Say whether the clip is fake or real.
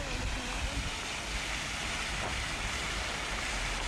real